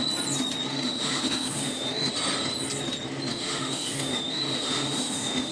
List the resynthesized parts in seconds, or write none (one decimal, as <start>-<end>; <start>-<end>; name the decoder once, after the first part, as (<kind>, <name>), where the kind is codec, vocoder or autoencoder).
0.7-2.1 (autoencoder, DAC-VAE); 3.3-5.5